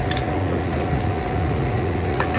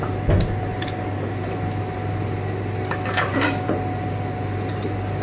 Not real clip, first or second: first